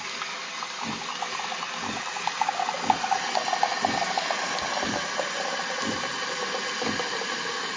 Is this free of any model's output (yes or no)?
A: yes